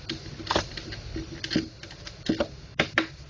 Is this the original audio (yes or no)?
yes